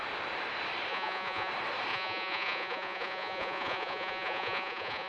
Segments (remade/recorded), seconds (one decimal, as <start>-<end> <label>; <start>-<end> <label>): 0.0-0.9 recorded; 0.9-1.5 remade; 1.5-1.9 recorded; 1.9-5.1 remade